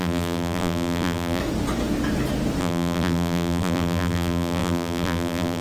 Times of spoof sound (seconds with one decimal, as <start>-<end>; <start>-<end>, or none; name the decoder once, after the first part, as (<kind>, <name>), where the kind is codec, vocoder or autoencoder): 0.0-1.4 (vocoder, BigVGAN v2); 2.6-5.6